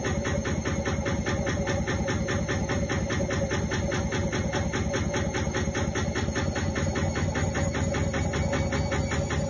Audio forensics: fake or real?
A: real